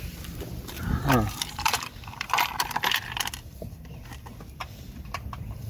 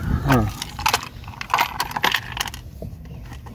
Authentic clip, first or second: second